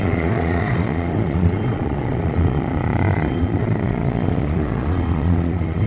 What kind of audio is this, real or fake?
fake